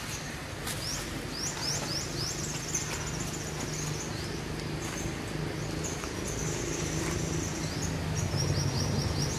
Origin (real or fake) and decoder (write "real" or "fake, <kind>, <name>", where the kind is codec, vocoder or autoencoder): real